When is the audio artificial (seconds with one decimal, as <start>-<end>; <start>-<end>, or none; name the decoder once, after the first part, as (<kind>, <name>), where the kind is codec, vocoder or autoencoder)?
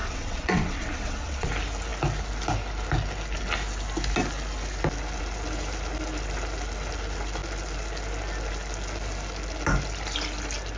0.0-1.5 (vocoder, WaveNeXt)